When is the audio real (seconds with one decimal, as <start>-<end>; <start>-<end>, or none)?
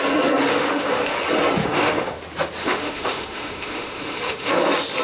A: 0.0-0.5; 1.2-1.6; 2.2-2.6; 4.5-5.0